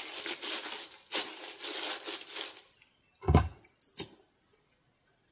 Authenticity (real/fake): real